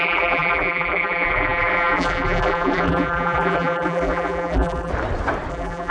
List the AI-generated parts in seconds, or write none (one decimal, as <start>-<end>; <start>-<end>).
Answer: 0.0-4.9; 5.5-5.9